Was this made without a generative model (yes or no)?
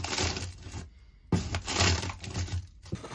yes